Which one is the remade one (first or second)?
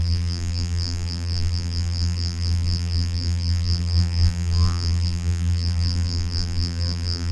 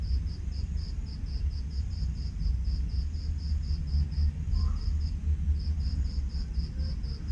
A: first